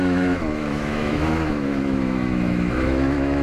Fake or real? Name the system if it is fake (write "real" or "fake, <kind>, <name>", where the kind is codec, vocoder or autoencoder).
fake, autoencoder, DAC-VAE